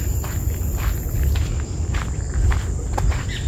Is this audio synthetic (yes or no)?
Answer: no